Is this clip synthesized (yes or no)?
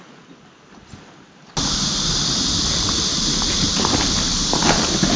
no